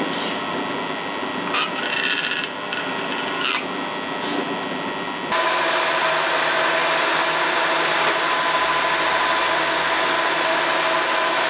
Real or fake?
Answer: real